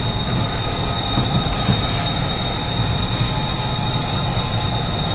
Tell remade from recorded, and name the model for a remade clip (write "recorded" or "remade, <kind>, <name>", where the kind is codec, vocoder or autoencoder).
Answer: recorded